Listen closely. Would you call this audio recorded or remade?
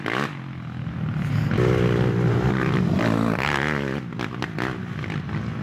recorded